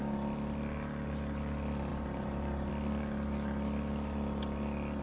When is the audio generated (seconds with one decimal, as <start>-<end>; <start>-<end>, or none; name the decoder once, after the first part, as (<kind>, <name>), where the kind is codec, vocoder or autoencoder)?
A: 1.9-2.7 (vocoder, BigVGAN v2)